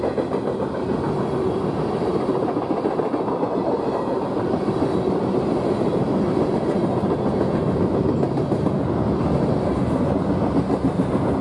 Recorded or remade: recorded